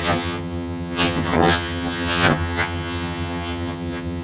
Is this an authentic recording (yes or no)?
no